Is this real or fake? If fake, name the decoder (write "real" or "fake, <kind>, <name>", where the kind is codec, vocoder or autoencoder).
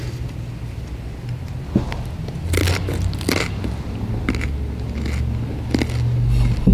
real